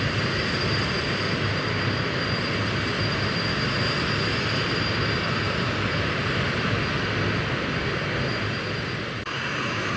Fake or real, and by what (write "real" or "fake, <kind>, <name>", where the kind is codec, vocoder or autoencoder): real